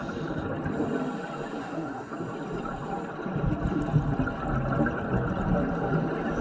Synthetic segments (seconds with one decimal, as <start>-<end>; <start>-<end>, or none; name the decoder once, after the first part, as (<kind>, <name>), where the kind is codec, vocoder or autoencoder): 1.6-2.1 (codec, SNAC)